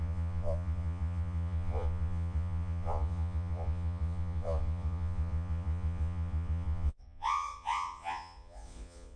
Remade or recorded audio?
remade